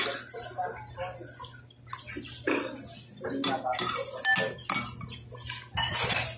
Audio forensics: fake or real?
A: real